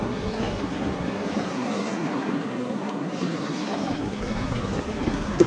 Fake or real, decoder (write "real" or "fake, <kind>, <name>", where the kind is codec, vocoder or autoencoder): fake, codec, SNAC